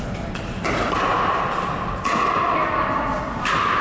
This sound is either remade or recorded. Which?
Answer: recorded